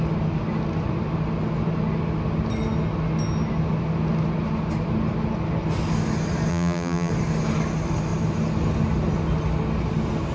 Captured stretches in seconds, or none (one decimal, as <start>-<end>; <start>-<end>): 0.0-6.5; 7.1-10.3